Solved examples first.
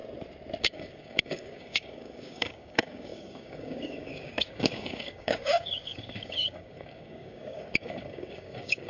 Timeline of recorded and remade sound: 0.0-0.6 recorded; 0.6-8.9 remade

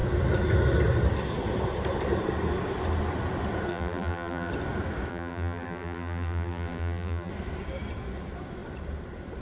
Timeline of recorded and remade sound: 0.0-3.7 recorded; 3.7-4.5 remade; 4.5-5.1 recorded; 5.1-7.3 remade; 7.3-9.4 recorded

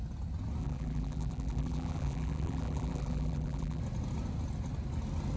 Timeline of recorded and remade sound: 0.0-0.6 recorded; 0.6-3.8 remade; 3.8-5.4 recorded

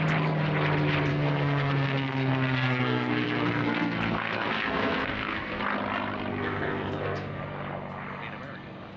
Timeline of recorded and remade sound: 0.0-1.1 recorded; 1.1-5.6 remade; 5.6-6.3 recorded; 6.3-7.4 remade; 7.4-9.0 recorded

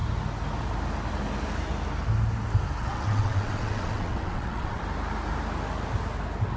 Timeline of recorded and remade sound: 0.0-2.8 recorded; 2.8-4.8 remade; 4.8-6.6 recorded